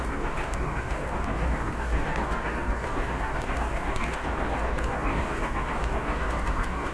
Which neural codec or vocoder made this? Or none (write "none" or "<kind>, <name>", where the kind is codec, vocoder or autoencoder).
codec, DAC